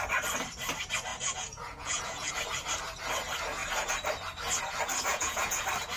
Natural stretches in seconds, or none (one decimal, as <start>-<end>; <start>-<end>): 0.0-1.1; 2.3-5.1; 5.6-6.0

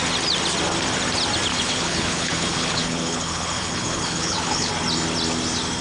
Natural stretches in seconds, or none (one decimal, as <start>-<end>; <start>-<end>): 0.0-1.5; 4.7-5.8

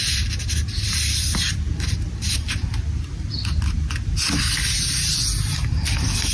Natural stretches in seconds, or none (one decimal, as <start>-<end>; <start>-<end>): 0.0-6.3

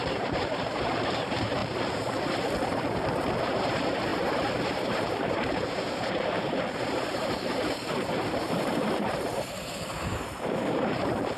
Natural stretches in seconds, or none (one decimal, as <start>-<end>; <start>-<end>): 1.6-3.4

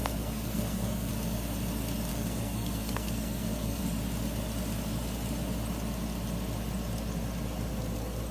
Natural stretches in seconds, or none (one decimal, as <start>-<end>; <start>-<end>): 1.1-2.1; 3.8-8.3

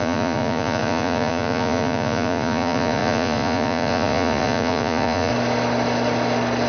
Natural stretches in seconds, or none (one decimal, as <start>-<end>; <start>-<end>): 5.3-6.7